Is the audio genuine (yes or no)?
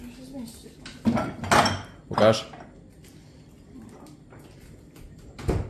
yes